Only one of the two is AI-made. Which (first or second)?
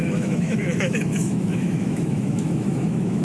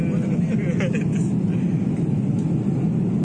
first